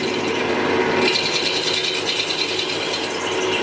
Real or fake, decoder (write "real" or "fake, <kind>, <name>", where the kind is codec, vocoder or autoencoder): real